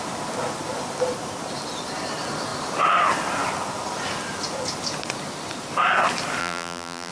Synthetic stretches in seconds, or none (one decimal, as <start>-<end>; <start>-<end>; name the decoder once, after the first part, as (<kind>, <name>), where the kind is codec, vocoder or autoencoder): 6.4-7.1 (vocoder, BigVGAN v2)